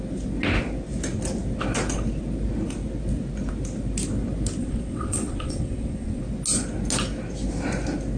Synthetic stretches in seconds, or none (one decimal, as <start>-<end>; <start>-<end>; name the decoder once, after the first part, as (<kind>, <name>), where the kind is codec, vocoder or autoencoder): 4.6-6.2 (vocoder, WaveNeXt)